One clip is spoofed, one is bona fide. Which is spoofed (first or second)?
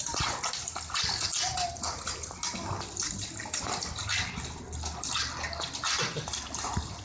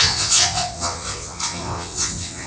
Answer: second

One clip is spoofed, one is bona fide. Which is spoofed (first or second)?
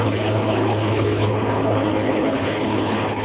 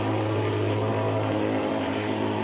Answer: first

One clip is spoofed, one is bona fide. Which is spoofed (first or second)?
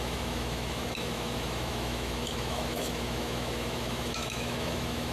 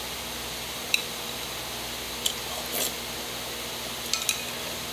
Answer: first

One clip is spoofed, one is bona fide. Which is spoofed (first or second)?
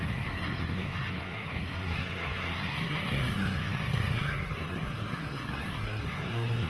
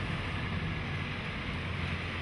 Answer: first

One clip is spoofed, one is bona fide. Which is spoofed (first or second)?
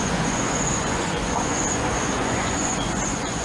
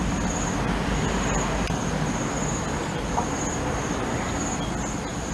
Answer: first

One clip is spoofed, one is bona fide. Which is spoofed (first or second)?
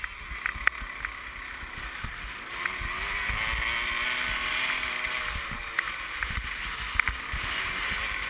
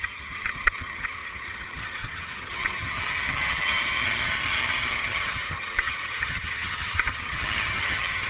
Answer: second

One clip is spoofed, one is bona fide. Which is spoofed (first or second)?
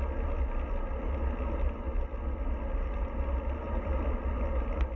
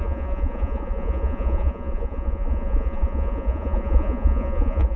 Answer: second